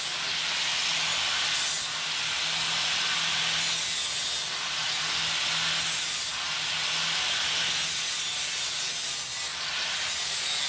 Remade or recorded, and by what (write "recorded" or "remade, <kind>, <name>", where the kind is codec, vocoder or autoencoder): recorded